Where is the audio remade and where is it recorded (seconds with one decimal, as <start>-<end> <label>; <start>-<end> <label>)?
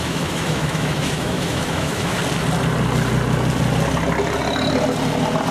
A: 0.0-2.2 remade; 2.2-5.5 recorded